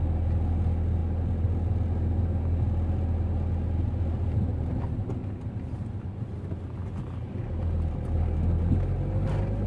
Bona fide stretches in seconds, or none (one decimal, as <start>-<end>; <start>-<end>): 0.0-9.7